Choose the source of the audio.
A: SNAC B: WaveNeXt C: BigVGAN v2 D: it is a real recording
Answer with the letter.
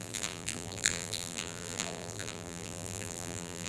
C